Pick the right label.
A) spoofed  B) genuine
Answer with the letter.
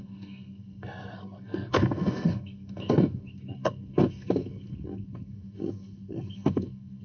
A